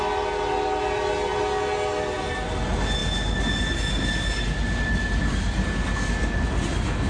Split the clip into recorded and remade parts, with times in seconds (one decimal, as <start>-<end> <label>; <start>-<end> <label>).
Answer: 0.0-7.1 recorded